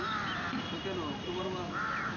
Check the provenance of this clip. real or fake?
real